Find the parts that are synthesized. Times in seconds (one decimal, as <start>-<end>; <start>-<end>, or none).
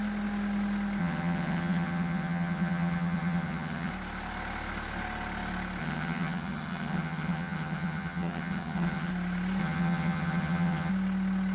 1.0-3.9; 5.8-9.1; 9.6-10.9